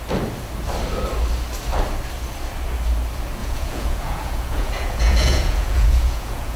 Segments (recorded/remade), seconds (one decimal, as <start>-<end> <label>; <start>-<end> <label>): 0.0-3.4 recorded; 3.4-6.6 remade